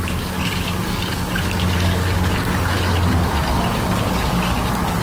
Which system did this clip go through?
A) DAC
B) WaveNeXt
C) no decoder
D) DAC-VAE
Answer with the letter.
A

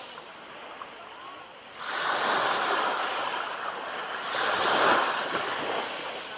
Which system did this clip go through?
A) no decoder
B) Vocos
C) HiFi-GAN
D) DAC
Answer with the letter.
A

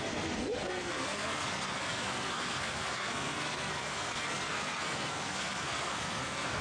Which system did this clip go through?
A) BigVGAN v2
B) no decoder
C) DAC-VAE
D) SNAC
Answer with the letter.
D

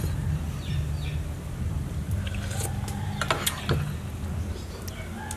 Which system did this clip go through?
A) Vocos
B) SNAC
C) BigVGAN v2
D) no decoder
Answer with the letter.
D